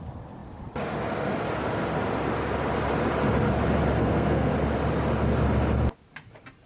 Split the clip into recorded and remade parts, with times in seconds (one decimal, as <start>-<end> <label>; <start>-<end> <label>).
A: 0.0-4.0 recorded; 4.0-4.5 remade; 4.5-6.7 recorded